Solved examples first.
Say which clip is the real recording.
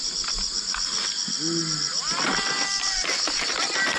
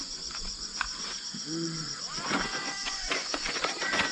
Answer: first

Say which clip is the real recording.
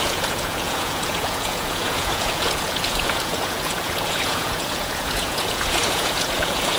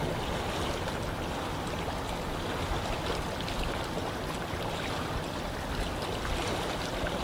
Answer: second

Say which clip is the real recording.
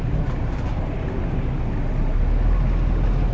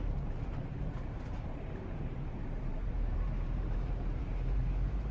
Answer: first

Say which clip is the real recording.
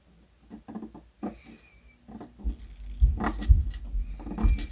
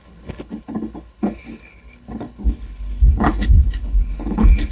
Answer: first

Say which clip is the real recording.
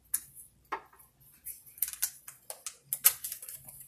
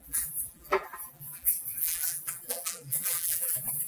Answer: first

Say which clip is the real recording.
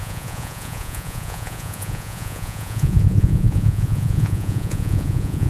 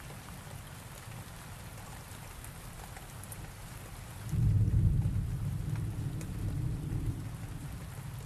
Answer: second